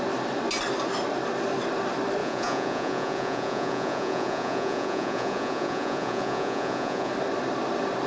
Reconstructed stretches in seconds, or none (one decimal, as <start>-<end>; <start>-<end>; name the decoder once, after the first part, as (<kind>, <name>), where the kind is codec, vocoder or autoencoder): 2.2-7.1 (vocoder, Vocos)